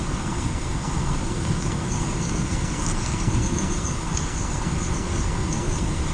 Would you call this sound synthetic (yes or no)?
yes